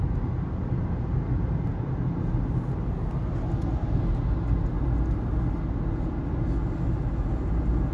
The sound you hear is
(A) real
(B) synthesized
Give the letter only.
A